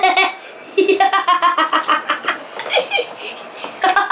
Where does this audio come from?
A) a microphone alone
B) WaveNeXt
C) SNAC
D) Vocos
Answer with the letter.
A